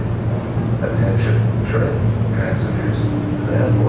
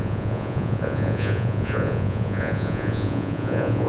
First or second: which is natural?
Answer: first